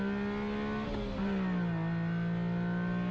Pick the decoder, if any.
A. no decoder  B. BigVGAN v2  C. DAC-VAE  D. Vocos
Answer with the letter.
A